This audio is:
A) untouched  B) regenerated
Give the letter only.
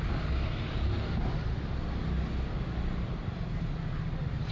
A